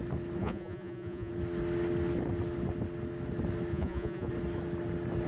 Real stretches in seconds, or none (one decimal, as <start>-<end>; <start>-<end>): 0.0-0.4; 1.3-3.7; 4.3-5.3